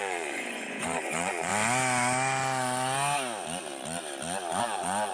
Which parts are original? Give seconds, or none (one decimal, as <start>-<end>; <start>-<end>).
1.5-4.6